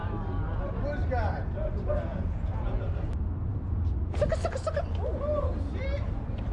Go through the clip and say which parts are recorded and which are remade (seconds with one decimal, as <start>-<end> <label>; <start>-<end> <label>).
0.0-2.1 recorded; 2.1-2.8 remade; 2.8-6.5 recorded